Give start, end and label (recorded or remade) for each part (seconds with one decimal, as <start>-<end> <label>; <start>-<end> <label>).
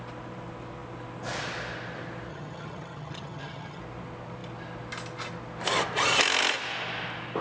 0.0-2.3 recorded; 2.3-3.8 remade; 3.8-7.4 recorded